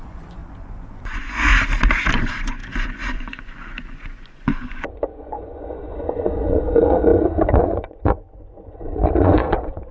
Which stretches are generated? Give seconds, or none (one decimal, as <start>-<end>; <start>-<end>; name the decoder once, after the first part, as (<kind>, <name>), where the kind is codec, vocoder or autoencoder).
0.0-1.5 (vocoder, Vocos); 2.1-9.9